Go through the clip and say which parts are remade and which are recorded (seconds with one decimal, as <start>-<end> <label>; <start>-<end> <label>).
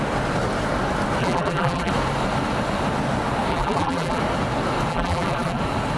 0.0-1.2 recorded; 1.2-1.9 remade; 1.9-3.5 recorded; 3.5-4.2 remade; 4.2-4.9 recorded; 4.9-5.6 remade; 5.6-6.0 recorded